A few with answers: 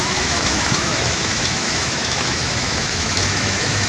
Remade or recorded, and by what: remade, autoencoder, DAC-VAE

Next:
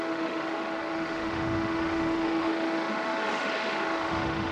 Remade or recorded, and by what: remade, autoencoder, DAC-VAE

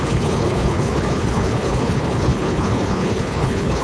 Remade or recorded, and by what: remade, codec, HILCodec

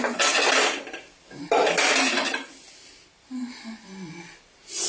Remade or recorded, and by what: recorded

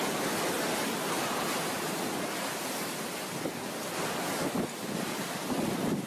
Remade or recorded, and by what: recorded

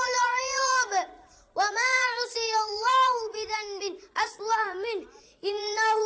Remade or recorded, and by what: remade, vocoder, Vocos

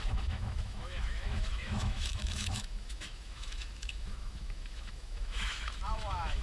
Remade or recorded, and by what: remade, autoencoder, DAC-VAE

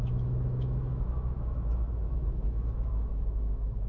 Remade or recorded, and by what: remade, autoencoder, DAC-VAE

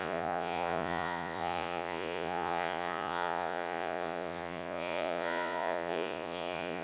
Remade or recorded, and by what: remade, vocoder, Vocos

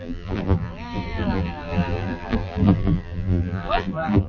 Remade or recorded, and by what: remade, vocoder, BigVGAN v2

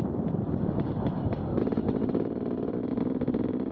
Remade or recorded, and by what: remade, vocoder, BigVGAN v2